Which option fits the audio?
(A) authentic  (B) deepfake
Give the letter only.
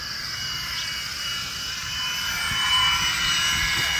A